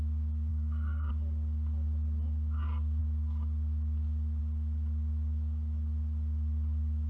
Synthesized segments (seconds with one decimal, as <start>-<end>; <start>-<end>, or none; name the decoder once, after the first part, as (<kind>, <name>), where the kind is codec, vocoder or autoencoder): 0.5-1.1 (codec, SNAC)